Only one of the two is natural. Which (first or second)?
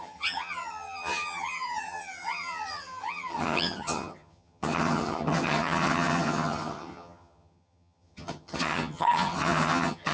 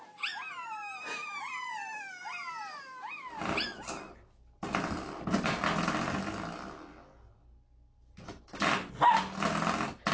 second